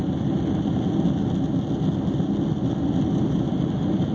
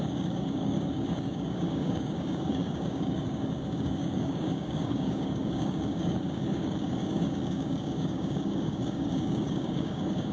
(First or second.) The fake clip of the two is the second